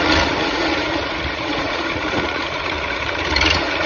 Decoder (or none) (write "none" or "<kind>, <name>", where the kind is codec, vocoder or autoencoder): vocoder, Vocos